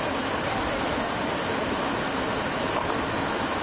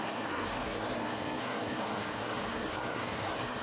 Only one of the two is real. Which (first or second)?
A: first